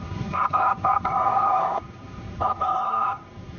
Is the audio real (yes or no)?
no